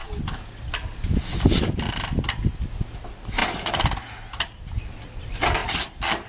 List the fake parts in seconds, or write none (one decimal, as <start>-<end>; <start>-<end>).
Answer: none